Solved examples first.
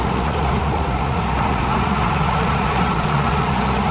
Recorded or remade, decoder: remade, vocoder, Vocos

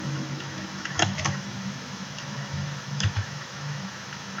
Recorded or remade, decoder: remade, autoencoder, DAC-VAE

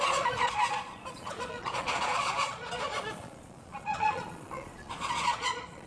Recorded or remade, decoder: remade, vocoder, Vocos